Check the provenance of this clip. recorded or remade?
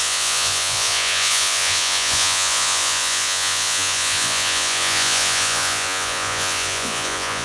remade